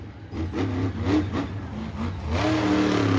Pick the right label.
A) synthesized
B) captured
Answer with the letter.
B